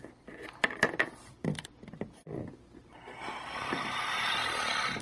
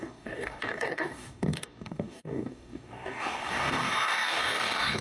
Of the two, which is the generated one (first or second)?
second